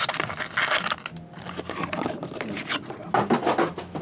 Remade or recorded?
recorded